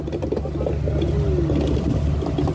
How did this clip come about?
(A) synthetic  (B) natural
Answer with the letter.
B